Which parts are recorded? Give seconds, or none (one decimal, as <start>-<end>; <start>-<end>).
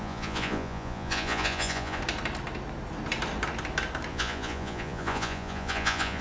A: 2.0-4.1